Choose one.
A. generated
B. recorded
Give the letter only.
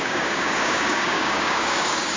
A